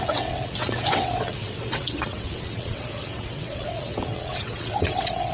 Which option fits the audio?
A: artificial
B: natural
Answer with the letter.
A